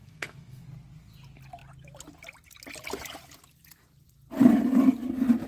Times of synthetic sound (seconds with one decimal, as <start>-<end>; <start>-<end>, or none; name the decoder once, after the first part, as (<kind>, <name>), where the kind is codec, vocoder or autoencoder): 0.0-0.6 (codec, SNAC)